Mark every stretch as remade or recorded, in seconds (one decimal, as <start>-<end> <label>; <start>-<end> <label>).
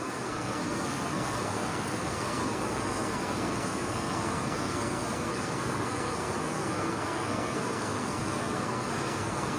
0.0-9.6 remade